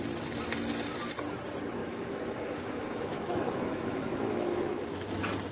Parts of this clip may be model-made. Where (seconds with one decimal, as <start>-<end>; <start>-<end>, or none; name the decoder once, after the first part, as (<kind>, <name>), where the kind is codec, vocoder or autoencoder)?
1.8-5.1 (autoencoder, DAC-VAE)